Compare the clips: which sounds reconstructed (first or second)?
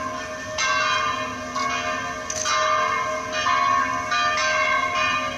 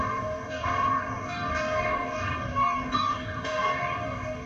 second